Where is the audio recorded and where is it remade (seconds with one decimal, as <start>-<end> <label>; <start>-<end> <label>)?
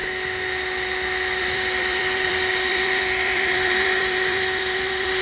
0.0-1.4 recorded; 1.4-5.2 remade